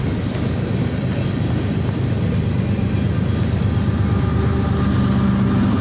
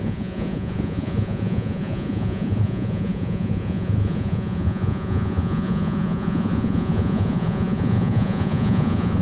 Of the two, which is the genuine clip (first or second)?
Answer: first